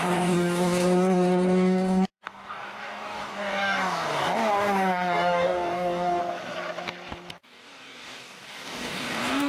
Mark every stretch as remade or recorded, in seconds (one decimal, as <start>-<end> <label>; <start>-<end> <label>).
0.0-6.2 remade; 6.2-7.3 recorded; 7.3-9.5 remade